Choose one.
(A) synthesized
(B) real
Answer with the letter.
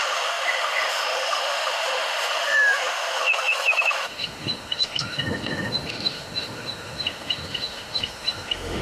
A